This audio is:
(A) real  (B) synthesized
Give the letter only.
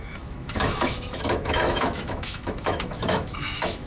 B